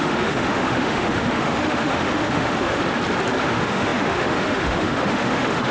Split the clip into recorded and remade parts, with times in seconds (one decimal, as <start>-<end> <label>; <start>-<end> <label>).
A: 0.0-2.8 remade; 2.8-3.4 recorded; 3.4-5.7 remade